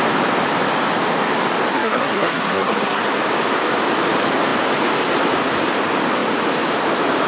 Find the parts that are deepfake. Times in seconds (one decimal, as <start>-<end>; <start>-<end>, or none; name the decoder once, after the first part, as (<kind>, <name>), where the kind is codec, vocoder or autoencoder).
1.7-3.0 (codec, SNAC)